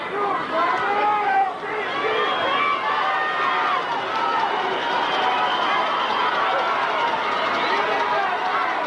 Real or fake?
real